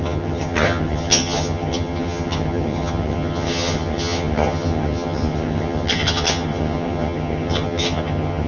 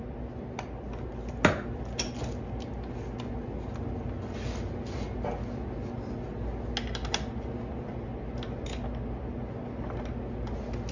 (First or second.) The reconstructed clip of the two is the first